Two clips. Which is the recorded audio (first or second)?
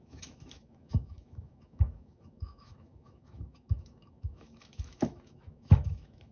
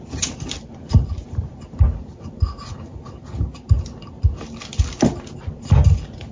second